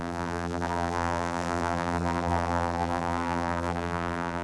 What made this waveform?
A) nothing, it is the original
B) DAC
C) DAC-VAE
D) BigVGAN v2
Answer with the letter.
D